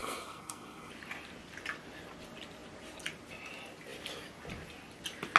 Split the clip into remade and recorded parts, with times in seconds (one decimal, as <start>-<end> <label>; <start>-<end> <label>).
0.0-0.9 remade; 0.9-5.4 recorded